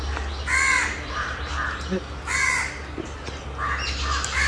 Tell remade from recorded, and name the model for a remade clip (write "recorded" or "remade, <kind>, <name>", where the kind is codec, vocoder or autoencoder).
recorded